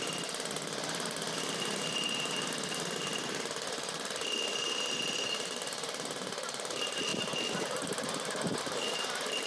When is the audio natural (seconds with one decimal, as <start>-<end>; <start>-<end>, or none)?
0.0-9.5